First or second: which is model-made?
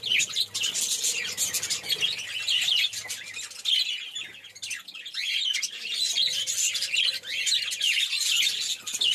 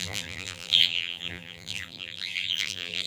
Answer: second